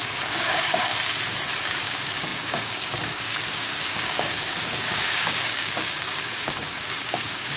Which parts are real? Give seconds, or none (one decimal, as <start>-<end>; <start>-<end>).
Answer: 0.9-1.6